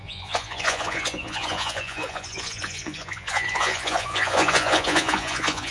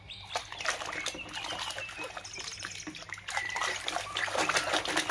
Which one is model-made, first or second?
first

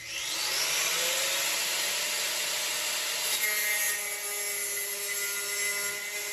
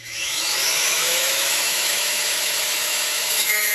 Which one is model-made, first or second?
second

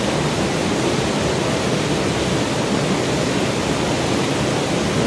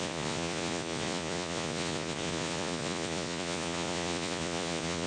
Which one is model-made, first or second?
second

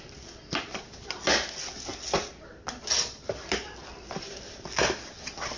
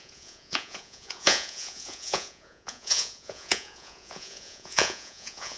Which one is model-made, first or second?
second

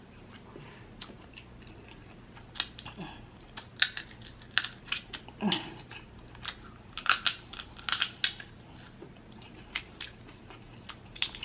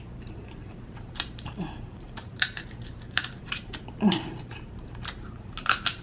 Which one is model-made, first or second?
second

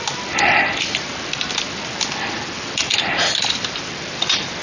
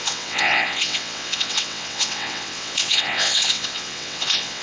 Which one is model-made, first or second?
second